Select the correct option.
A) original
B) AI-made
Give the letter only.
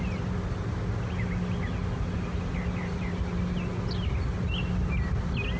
A